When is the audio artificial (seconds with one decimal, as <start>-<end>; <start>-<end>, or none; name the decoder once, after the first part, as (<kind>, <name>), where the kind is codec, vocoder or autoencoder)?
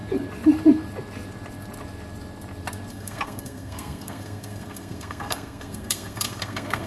2.9-6.9 (codec, SNAC)